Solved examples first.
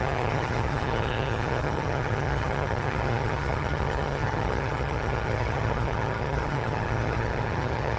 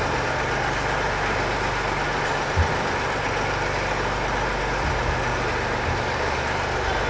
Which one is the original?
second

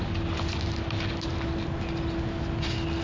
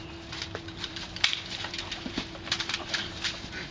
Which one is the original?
first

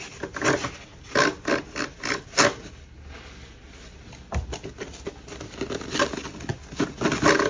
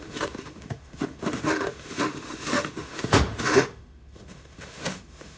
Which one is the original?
first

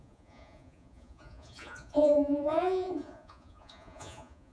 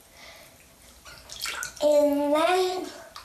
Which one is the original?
second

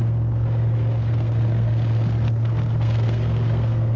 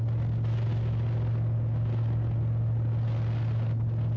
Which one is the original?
second